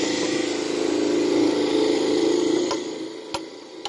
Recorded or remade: recorded